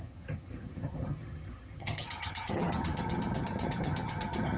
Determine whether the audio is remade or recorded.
remade